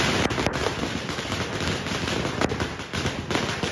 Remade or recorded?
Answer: recorded